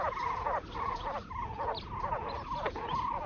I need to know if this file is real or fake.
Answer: real